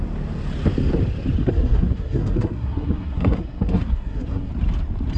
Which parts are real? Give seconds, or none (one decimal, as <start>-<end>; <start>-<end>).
0.0-1.4; 4.5-5.2